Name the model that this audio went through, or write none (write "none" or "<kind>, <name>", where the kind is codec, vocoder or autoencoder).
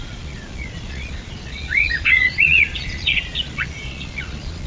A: vocoder, Vocos